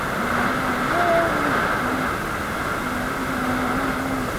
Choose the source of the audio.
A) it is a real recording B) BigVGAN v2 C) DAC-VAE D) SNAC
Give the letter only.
A